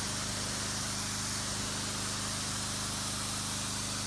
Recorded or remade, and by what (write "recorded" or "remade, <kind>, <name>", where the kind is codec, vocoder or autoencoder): recorded